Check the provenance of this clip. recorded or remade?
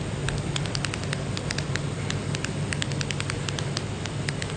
recorded